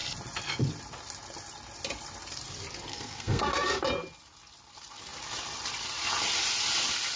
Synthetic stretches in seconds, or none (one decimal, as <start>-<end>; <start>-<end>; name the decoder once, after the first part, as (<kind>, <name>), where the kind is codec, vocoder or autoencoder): 2.9-3.8 (codec, SNAC)